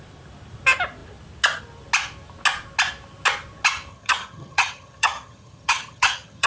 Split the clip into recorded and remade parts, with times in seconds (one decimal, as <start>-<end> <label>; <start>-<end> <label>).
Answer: 0.0-3.9 recorded; 3.9-6.5 remade